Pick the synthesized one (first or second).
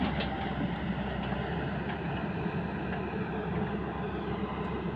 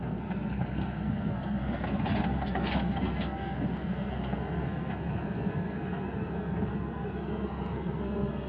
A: second